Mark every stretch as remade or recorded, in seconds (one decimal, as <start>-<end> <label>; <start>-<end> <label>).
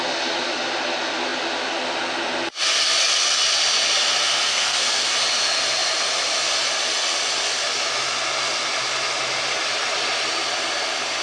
0.0-4.5 recorded; 4.5-5.1 remade; 5.1-11.2 recorded